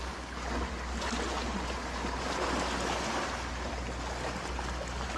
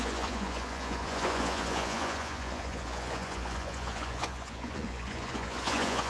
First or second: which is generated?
second